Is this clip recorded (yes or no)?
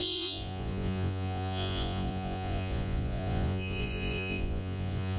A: no